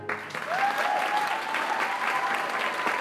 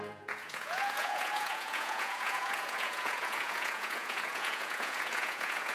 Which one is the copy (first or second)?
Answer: second